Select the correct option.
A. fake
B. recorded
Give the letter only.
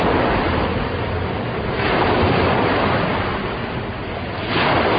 B